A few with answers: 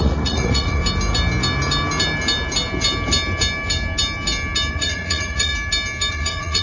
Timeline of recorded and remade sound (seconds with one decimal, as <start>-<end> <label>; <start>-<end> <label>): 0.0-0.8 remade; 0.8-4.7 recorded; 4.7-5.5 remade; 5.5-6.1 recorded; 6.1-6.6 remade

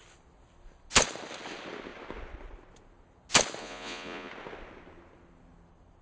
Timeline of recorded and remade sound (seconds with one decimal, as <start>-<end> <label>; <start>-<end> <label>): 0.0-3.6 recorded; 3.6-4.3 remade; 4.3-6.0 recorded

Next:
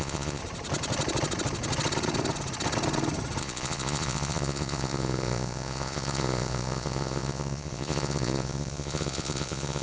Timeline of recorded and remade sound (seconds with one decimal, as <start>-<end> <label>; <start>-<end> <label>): 0.0-0.4 remade; 0.4-3.4 recorded; 3.4-9.8 remade

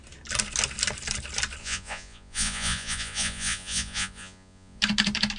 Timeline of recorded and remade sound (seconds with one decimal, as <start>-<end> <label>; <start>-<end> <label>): 0.0-1.6 recorded; 1.6-4.8 remade; 4.8-5.4 recorded